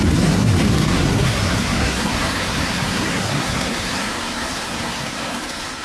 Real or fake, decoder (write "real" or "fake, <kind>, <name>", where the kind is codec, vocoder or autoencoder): fake, codec, SNAC